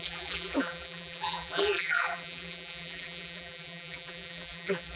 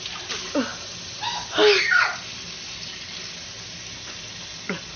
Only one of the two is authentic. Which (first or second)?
second